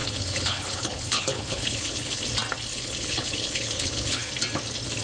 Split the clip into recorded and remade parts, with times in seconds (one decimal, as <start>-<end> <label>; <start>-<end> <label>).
0.0-2.2 remade; 2.2-2.7 recorded; 2.7-4.3 remade; 4.3-5.0 recorded